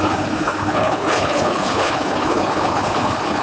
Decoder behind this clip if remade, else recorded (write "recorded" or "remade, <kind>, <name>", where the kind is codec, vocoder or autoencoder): remade, codec, HILCodec